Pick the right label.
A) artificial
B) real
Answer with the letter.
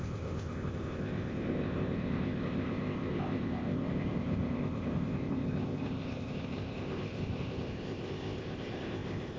A